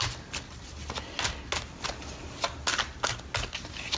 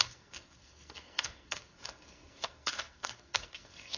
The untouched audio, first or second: first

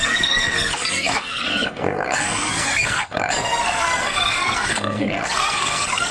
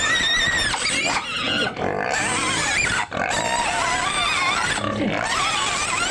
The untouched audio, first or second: second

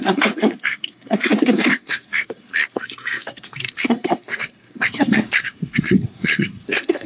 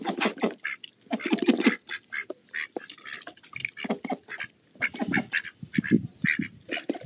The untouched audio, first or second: second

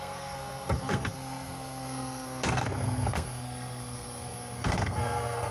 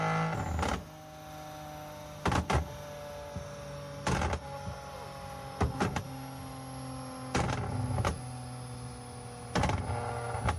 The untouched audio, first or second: second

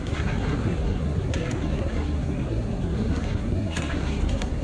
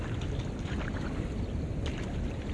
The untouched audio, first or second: second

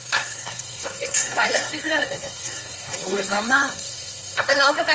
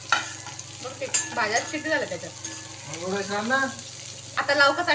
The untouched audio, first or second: second